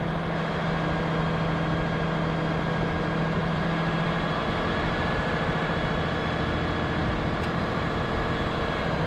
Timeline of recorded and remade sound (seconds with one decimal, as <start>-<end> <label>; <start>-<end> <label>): 0.0-3.4 recorded; 3.4-6.2 remade; 6.2-7.0 recorded; 7.0-8.6 remade; 8.6-9.1 recorded